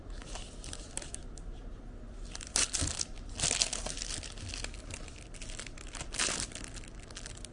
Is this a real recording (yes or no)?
yes